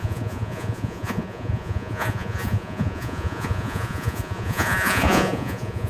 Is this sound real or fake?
fake